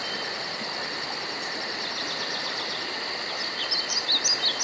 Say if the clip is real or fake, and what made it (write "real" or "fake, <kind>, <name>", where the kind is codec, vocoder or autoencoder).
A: real